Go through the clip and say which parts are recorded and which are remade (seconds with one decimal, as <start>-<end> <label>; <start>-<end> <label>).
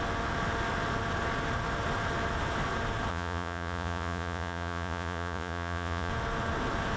0.0-3.1 recorded; 3.1-6.1 remade; 6.1-7.0 recorded